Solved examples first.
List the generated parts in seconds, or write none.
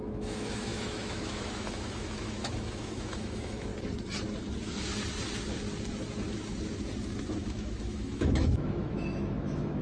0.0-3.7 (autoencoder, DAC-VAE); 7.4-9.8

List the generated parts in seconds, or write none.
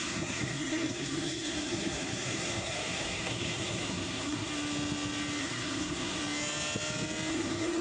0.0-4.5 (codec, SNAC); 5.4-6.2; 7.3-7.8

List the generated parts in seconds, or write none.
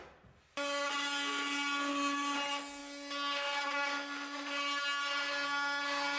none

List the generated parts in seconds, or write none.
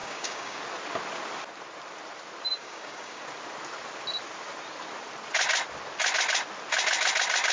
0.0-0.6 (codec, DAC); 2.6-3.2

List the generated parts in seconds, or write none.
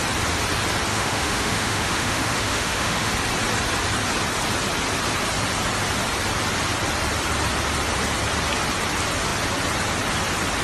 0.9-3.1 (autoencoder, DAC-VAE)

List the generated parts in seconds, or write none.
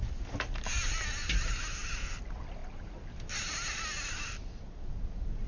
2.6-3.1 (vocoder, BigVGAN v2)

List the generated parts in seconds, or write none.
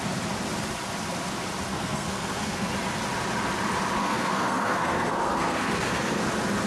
1.7-2.7 (codec, SNAC); 4.0-6.2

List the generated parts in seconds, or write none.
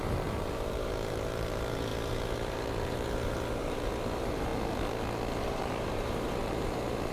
0.0-4.5 (vocoder, BigVGAN v2); 5.4-7.1